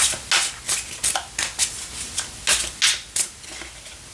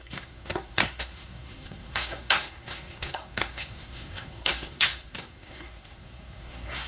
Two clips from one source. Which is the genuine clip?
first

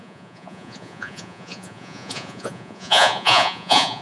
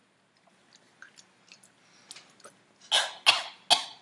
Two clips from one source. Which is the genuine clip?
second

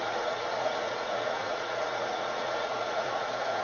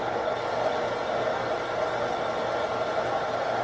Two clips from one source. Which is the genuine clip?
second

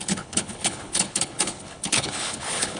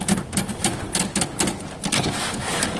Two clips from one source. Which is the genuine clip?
second